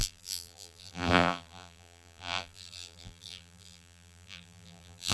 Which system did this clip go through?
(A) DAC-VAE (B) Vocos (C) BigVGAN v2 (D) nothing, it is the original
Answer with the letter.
C